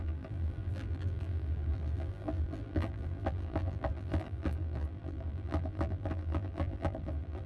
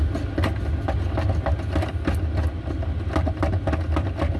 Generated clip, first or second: first